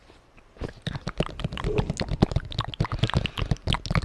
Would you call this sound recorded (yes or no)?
yes